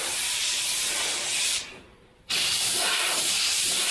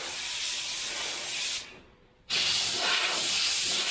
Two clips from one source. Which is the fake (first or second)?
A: first